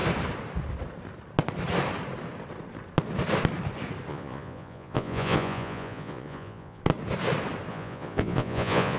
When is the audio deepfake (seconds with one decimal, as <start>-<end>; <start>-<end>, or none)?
4.1-6.8; 7.7-9.0